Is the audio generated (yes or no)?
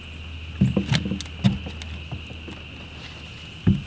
no